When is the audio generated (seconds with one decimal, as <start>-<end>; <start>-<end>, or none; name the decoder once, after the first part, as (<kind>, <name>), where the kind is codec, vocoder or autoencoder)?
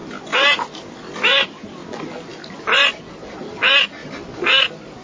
none